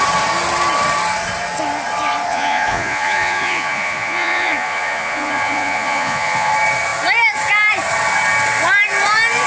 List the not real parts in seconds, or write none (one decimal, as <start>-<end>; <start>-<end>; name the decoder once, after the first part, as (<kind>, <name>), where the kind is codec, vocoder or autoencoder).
2.3-6.5 (vocoder, Vocos)